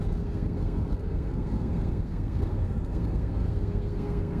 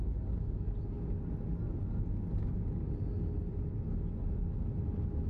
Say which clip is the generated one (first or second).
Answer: first